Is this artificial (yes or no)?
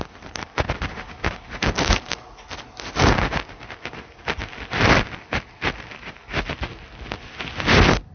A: no